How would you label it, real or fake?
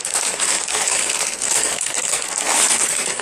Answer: fake